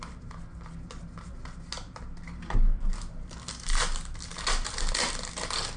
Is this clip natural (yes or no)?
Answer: yes